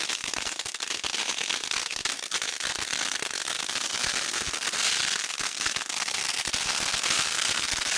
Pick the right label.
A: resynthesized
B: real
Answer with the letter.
A